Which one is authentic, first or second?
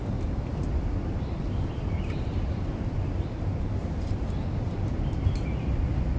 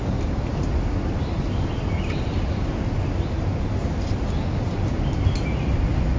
second